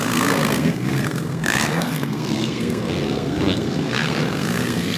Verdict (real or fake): fake